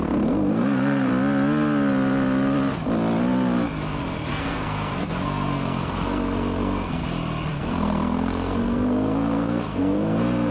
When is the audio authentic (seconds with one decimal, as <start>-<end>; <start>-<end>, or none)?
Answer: 1.1-4.3; 7.0-7.5